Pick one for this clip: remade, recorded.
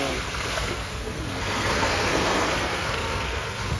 remade